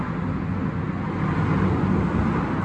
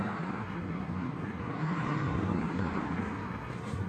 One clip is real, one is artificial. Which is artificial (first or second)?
second